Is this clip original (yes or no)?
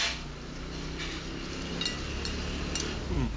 yes